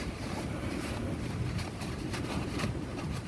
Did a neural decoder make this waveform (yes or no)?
yes